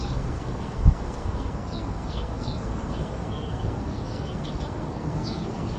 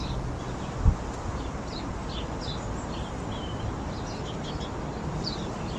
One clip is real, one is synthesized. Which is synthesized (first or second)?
first